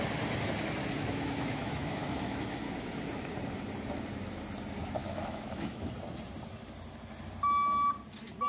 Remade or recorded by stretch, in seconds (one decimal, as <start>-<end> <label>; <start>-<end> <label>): 0.0-0.8 recorded; 0.8-3.0 remade; 3.0-5.0 recorded; 5.0-5.9 remade; 5.9-8.5 recorded